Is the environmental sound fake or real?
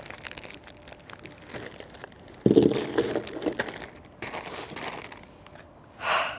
real